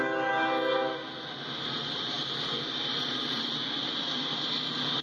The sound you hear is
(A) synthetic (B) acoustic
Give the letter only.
B